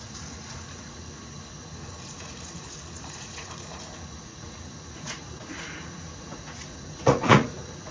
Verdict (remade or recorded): remade